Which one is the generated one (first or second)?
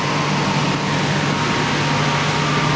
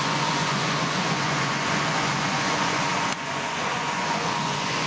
second